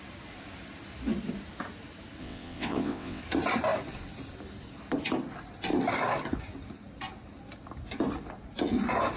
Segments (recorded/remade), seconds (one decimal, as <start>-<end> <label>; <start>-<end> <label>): 0.0-2.2 recorded; 2.2-3.2 remade; 3.2-9.2 recorded